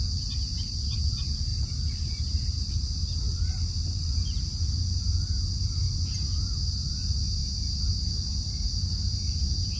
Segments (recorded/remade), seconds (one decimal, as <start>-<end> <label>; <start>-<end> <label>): 0.0-9.8 recorded